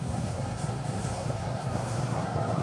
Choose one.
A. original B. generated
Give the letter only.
B